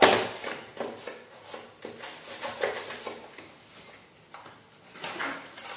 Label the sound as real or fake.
real